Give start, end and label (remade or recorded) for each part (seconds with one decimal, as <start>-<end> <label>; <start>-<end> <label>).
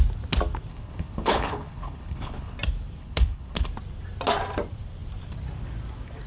0.0-0.7 recorded; 0.7-2.6 remade; 2.6-3.0 recorded; 3.0-3.7 remade; 3.7-6.3 recorded